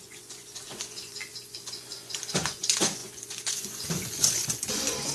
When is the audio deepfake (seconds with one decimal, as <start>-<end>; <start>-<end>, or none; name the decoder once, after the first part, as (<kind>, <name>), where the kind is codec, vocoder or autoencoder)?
0.0-5.1 (vocoder, Vocos)